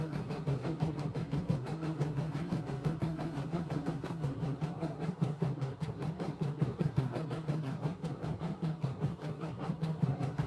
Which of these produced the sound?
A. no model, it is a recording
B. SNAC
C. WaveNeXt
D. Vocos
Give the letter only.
B